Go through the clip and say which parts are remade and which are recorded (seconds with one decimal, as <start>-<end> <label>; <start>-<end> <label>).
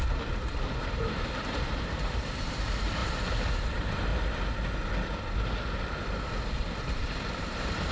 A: 0.0-4.1 remade; 4.1-6.8 recorded; 6.8-7.9 remade